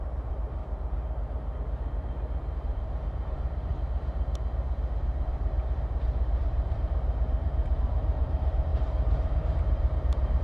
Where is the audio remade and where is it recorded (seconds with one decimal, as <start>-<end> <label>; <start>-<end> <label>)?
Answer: 0.0-0.6 remade; 0.6-2.5 recorded; 2.5-3.7 remade; 3.7-5.0 recorded; 5.0-10.4 remade